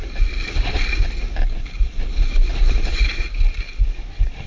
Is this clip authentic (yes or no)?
yes